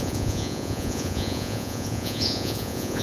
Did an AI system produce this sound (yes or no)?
yes